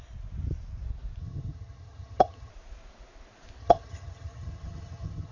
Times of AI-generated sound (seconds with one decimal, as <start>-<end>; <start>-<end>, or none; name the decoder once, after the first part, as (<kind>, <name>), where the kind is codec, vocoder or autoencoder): 1.2-2.5 (vocoder, HiFi-GAN); 3.6-5.3